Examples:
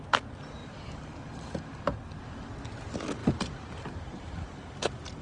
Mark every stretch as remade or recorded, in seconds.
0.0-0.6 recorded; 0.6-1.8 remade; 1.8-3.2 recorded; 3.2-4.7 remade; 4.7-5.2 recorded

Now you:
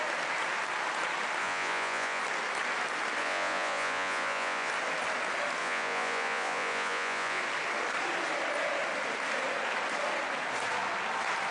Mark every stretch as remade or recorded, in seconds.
0.0-1.4 recorded; 1.4-2.2 remade; 2.2-3.2 recorded; 3.2-4.7 remade; 4.7-5.6 recorded; 5.6-7.4 remade; 7.4-11.5 recorded

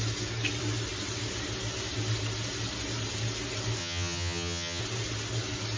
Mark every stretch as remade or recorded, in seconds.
0.0-3.8 recorded; 3.8-4.8 remade; 4.8-5.8 recorded

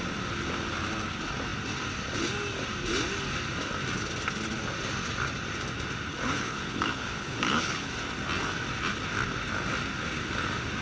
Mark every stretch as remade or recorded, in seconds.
0.0-6.1 recorded; 6.1-7.9 remade; 7.9-10.8 recorded

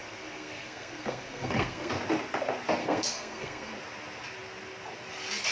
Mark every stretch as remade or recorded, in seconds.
0.0-1.9 remade; 1.9-2.8 recorded; 2.8-3.7 remade; 3.7-5.5 recorded

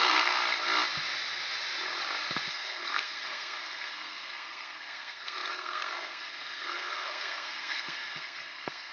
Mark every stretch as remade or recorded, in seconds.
0.0-0.4 remade; 0.4-2.5 recorded; 2.5-8.9 remade